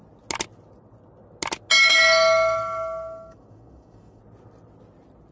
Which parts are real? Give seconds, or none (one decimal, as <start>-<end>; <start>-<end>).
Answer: 0.0-1.8; 4.2-5.3